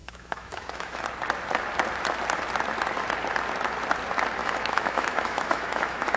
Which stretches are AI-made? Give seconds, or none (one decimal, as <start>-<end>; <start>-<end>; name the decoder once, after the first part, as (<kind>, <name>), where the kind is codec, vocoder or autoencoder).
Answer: 0.0-1.0 (autoencoder, DAC-VAE); 4.4-6.2